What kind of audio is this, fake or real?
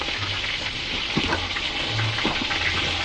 real